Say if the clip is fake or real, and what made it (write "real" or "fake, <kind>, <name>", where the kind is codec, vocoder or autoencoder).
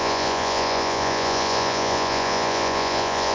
fake, vocoder, Vocos